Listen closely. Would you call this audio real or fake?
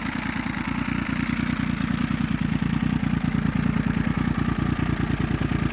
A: real